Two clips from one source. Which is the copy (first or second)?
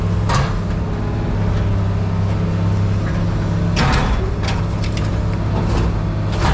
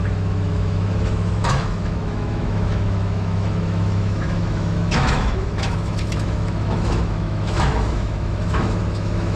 second